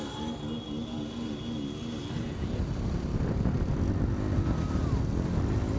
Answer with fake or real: real